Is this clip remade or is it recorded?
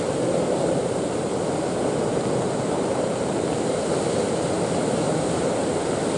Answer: recorded